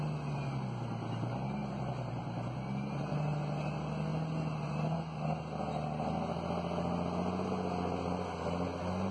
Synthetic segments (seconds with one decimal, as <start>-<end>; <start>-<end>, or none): none